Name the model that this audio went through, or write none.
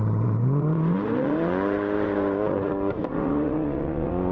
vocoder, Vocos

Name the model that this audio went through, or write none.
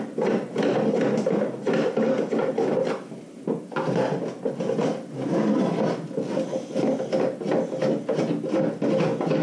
none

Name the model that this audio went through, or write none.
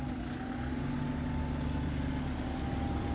none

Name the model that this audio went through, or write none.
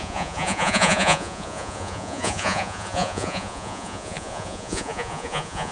vocoder, Vocos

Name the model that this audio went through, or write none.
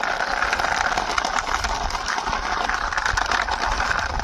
vocoder, BigVGAN v2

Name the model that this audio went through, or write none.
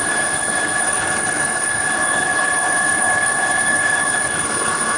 codec, HILCodec